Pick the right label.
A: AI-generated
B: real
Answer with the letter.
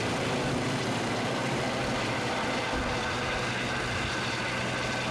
B